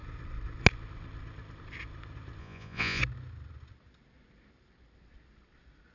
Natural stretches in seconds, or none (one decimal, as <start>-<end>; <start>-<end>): 0.0-2.4; 3.0-5.9